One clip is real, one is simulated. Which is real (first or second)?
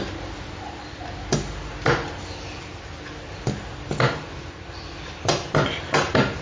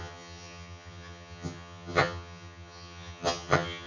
first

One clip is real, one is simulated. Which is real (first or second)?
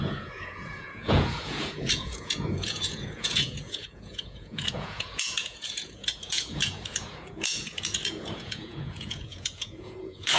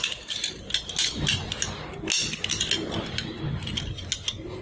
second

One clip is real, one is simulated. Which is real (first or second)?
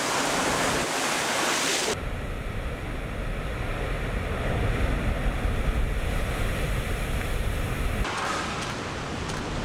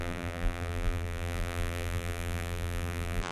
first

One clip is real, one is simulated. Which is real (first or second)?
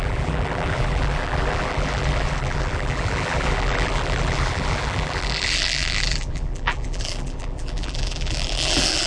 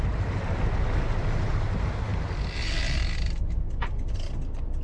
second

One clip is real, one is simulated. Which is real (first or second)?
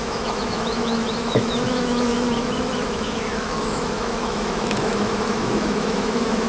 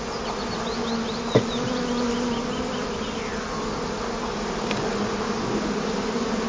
second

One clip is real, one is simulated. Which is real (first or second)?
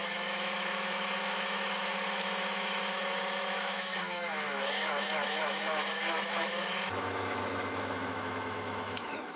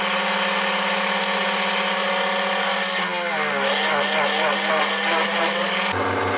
second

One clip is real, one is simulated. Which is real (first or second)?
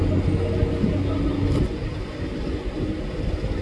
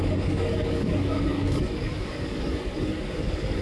first